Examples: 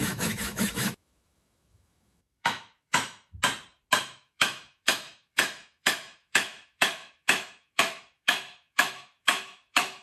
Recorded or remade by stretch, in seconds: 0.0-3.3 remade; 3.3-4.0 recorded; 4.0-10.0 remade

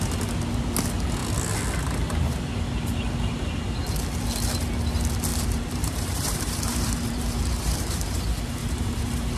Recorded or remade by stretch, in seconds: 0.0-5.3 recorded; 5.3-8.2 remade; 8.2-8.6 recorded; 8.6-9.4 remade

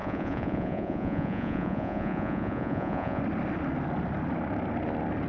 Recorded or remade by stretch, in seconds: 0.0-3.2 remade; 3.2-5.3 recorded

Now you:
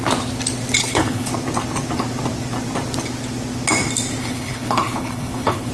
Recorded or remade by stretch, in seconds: 0.0-0.8 recorded; 0.8-1.3 remade; 1.3-4.2 recorded; 4.2-5.7 remade